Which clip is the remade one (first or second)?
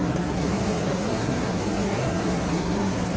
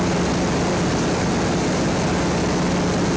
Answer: first